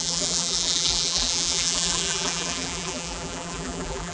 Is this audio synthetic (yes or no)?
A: yes